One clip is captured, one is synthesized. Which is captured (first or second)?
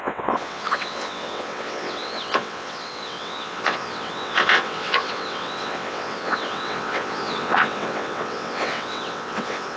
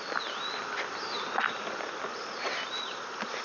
second